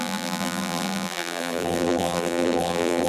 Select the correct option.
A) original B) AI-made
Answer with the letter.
B